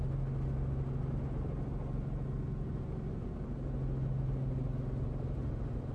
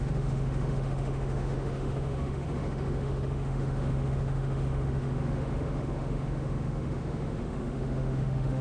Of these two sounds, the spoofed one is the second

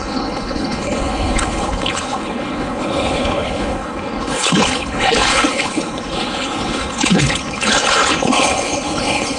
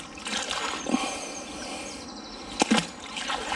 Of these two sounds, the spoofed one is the first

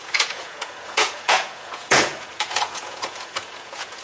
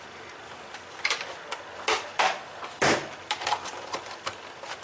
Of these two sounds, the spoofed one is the first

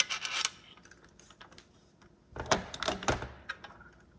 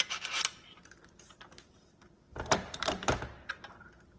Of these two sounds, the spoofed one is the second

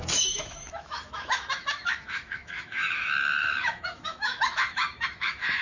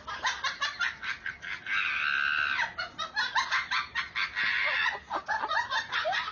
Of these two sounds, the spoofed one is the first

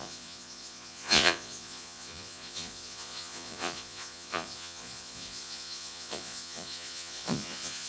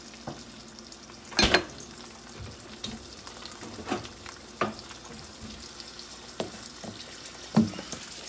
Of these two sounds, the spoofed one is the first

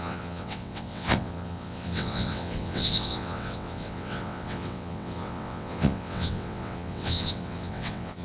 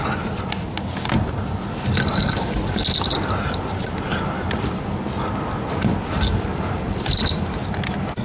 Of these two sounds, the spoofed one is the first